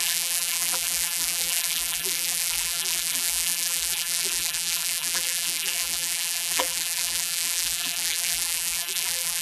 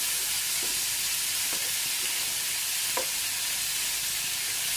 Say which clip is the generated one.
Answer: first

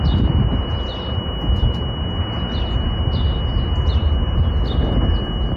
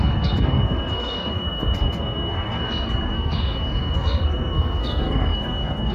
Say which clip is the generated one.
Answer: second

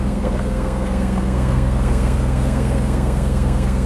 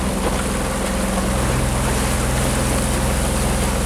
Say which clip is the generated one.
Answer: first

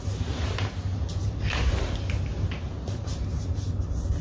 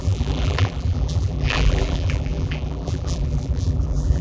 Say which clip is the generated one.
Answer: second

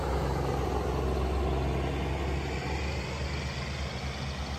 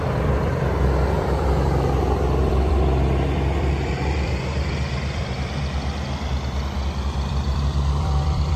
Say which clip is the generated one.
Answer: second